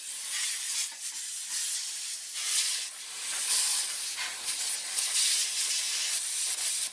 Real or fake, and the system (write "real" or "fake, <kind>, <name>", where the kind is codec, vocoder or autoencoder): real